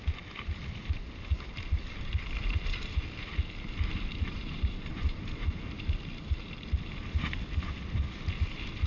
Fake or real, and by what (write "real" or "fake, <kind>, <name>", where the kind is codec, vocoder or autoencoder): real